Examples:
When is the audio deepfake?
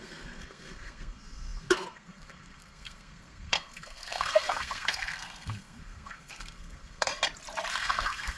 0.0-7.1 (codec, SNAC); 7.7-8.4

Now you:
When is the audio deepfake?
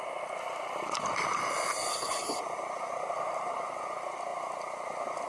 1.9-2.4 (codec, HILCodec)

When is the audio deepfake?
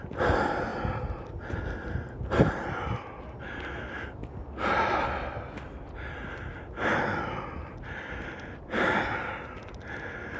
none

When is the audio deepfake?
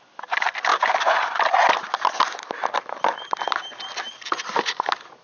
none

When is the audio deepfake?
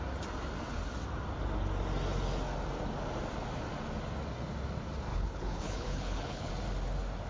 5.1-6.5 (codec, HILCodec)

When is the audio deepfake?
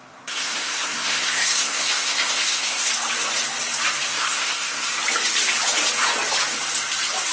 0.0-2.9 (codec, SNAC); 4.1-4.9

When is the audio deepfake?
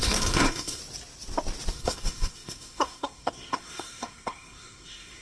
0.0-0.8 (codec, SNAC); 1.7-5.2